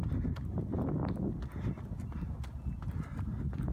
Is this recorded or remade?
recorded